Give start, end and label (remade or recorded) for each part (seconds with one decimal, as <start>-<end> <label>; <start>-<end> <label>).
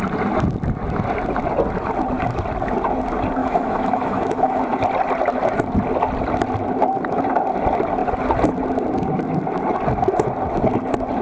0.0-3.4 recorded; 3.4-4.6 remade; 4.6-11.2 recorded